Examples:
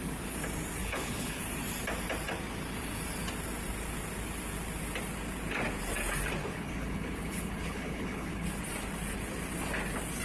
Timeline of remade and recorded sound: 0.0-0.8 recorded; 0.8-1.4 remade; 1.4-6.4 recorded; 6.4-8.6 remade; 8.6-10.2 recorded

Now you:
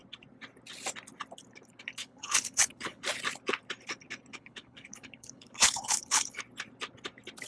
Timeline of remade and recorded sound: 0.0-2.0 recorded; 2.0-3.0 remade; 3.0-4.3 recorded; 4.3-6.4 remade; 6.4-7.5 recorded

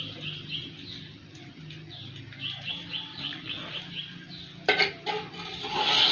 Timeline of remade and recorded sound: 0.0-3.1 recorded; 3.1-3.8 remade; 3.8-6.1 recorded

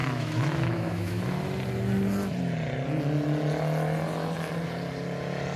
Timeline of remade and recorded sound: 0.0-1.2 remade; 1.2-5.6 recorded

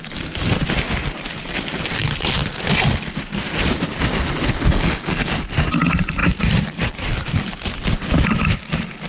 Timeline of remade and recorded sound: 0.0-6.2 recorded; 6.2-7.8 remade; 7.8-9.1 recorded

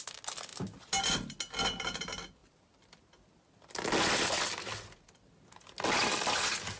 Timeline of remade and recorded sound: 0.0-6.8 recorded

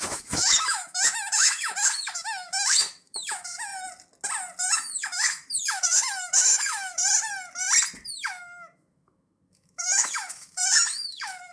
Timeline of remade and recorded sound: 0.0-3.7 remade; 3.7-4.7 recorded; 4.7-7.0 remade; 7.0-8.1 recorded; 8.1-11.5 remade